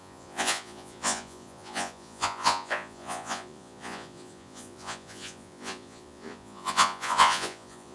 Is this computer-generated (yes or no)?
yes